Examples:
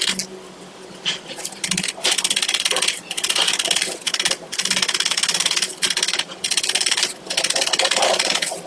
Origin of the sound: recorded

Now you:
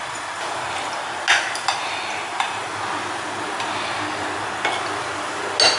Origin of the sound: recorded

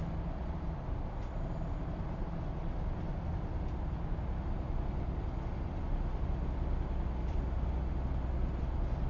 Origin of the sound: recorded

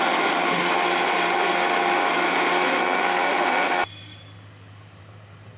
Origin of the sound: recorded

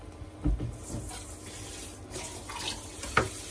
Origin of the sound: recorded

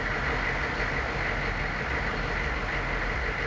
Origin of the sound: recorded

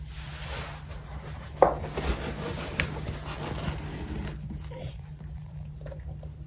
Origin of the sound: recorded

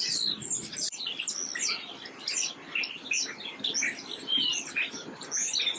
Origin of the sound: recorded